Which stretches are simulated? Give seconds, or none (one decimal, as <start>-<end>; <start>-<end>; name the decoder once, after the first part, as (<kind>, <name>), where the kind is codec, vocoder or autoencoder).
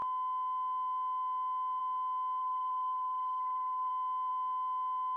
2.4-3.9 (codec, SNAC)